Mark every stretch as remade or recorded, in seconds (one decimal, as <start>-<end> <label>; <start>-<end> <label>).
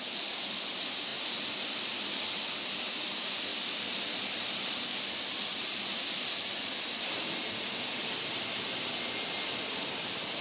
0.0-10.4 remade